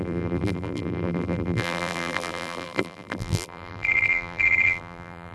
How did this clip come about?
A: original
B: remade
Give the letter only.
B